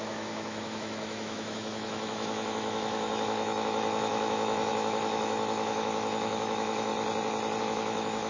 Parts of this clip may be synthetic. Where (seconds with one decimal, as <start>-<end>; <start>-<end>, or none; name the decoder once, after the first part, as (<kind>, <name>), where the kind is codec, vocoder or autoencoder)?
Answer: 0.0-6.9 (autoencoder, DAC-VAE); 7.6-8.3